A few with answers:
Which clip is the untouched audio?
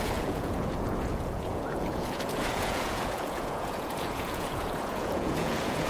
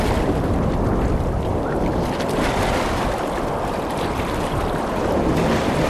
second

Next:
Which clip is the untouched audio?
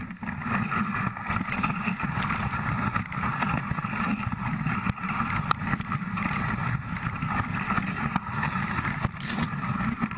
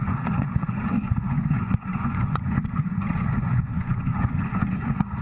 first